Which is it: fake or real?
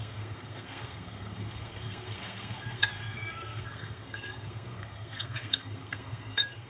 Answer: fake